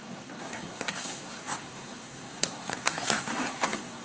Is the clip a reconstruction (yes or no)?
yes